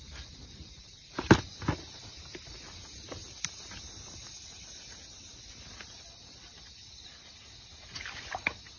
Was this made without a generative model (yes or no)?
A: yes